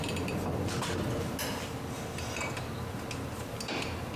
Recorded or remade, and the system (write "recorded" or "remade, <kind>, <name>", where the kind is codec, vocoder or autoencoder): recorded